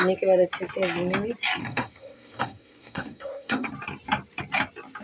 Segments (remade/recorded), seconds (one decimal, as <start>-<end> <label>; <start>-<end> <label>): 0.0-1.6 recorded; 1.6-3.7 remade; 3.7-5.0 recorded